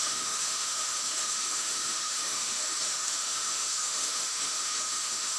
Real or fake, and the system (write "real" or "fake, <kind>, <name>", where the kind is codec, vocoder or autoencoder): fake, autoencoder, DAC-VAE